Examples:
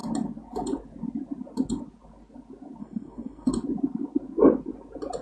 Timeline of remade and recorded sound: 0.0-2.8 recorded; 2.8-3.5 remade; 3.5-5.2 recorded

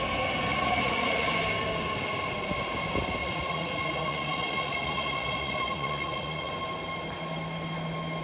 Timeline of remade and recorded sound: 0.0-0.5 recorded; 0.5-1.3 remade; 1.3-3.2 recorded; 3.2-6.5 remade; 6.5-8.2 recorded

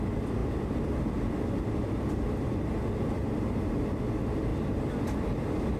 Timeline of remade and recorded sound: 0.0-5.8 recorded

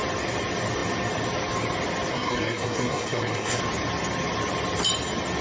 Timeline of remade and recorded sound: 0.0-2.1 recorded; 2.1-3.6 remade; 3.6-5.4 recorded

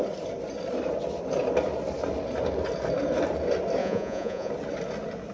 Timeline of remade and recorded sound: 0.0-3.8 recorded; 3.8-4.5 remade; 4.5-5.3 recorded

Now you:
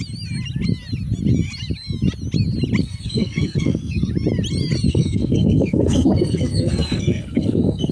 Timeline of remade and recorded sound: 0.0-2.8 recorded; 2.8-4.1 remade; 4.1-4.9 recorded; 4.9-7.9 remade